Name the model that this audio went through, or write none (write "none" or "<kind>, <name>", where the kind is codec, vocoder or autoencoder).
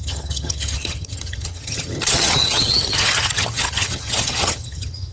vocoder, HiFi-GAN